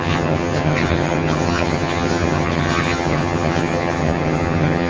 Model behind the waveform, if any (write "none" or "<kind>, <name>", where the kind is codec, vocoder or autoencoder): vocoder, HiFi-GAN